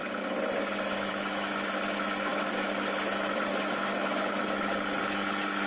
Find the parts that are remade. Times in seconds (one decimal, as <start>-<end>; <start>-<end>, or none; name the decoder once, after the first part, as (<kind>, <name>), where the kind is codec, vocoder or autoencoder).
1.1-5.7 (autoencoder, DAC-VAE)